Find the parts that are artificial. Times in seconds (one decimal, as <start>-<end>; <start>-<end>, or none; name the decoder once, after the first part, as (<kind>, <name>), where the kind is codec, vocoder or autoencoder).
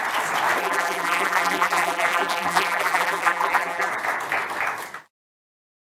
0.6-3.9 (vocoder, BigVGAN v2)